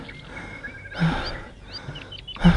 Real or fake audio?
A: real